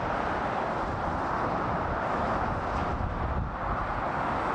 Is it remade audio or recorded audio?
recorded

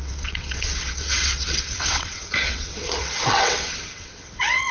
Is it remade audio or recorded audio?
remade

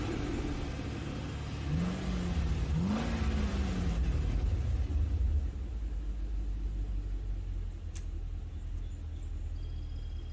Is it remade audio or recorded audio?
recorded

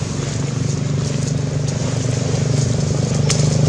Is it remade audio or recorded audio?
recorded